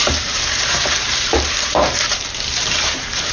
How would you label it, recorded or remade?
remade